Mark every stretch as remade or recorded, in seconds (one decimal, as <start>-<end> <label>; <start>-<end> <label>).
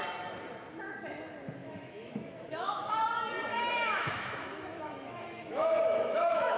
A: 0.0-1.6 recorded; 1.6-2.9 remade; 2.9-3.5 recorded; 3.5-6.6 remade